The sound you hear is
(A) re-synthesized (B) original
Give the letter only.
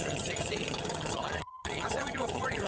A